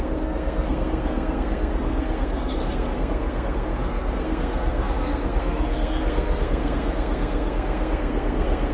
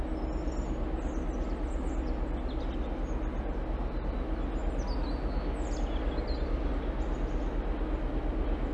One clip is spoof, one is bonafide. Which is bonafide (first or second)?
second